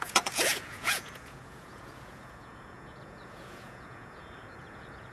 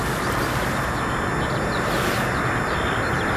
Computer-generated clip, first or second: first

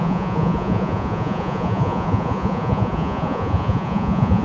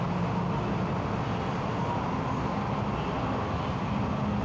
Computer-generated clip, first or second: first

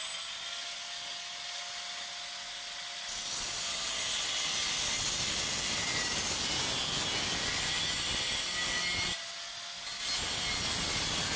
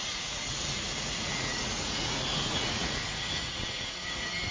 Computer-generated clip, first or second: second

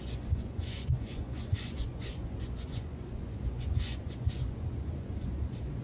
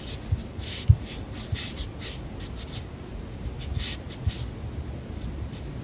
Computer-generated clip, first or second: first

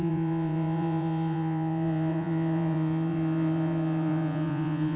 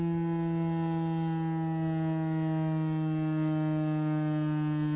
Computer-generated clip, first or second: first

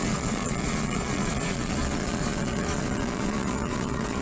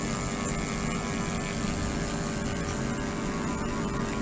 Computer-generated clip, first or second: first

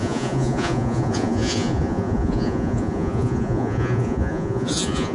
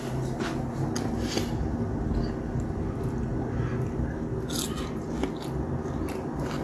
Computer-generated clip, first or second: first